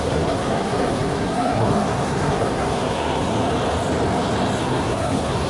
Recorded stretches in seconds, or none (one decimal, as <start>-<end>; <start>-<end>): 3.3-4.6